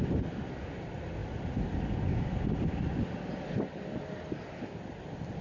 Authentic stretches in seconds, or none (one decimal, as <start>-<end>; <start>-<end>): 0.0-5.4